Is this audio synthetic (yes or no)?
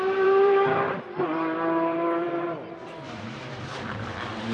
yes